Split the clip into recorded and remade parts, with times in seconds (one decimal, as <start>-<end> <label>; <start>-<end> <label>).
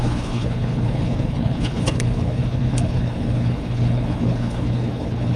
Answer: 0.0-5.4 remade